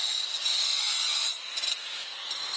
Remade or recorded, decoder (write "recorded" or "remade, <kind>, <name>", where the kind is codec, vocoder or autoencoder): recorded